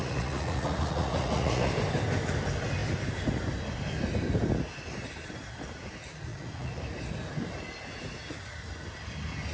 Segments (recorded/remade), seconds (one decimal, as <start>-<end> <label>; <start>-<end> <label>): 0.0-1.7 remade; 1.7-6.3 recorded; 6.3-6.8 remade; 6.8-9.5 recorded

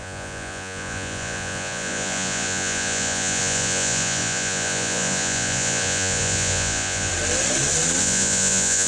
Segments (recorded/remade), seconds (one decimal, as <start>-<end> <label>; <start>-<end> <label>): 0.0-7.1 remade; 7.1-8.0 recorded; 8.0-8.9 remade

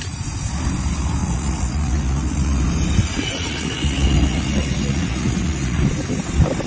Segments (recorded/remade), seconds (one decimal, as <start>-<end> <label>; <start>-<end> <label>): 0.0-1.2 recorded; 1.2-2.6 remade; 2.6-3.0 recorded; 3.0-5.8 remade; 5.8-6.7 recorded